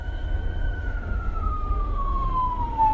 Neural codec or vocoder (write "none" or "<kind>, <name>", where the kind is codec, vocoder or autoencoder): autoencoder, DAC-VAE